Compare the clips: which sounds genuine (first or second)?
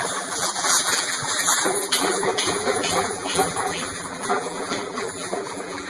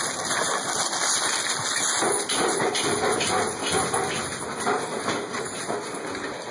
second